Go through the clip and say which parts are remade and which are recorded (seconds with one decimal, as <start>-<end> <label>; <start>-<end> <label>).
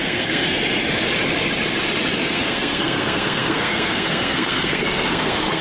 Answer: 0.0-0.6 remade; 0.6-2.2 recorded; 2.2-5.6 remade